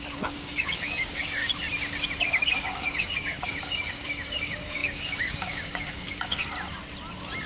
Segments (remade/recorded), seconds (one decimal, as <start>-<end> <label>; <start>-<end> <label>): 0.0-1.4 remade; 1.4-2.2 recorded; 2.2-6.4 remade; 6.4-7.5 recorded